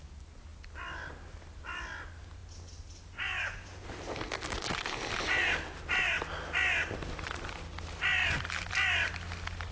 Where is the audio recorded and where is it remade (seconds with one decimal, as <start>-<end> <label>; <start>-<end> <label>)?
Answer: 0.0-9.7 recorded